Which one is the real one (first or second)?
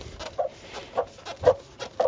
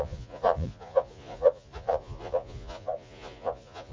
first